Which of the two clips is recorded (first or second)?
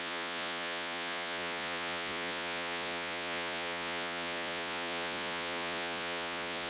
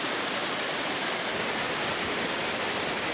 second